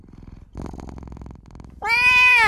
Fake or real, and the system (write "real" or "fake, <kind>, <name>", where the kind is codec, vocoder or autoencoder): real